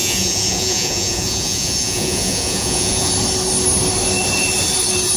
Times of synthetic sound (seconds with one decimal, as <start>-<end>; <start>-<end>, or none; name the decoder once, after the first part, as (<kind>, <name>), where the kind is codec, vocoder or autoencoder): 0.0-3.1 (vocoder, Vocos)